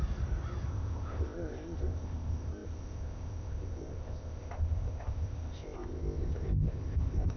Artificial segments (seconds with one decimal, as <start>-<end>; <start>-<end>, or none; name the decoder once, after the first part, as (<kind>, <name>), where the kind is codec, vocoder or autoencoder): 0.7-7.4 (codec, ZipCodec)